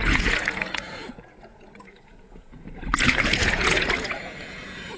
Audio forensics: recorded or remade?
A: remade